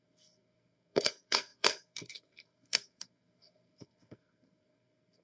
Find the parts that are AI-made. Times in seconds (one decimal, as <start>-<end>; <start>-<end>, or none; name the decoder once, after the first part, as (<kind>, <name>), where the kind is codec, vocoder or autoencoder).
0.0-5.2 (codec, SNAC)